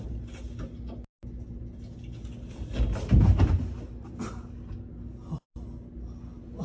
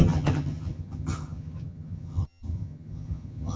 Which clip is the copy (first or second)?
second